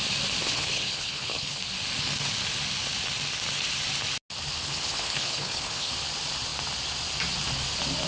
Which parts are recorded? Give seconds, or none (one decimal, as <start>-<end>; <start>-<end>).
0.0-0.4; 1.6-4.6; 5.9-8.1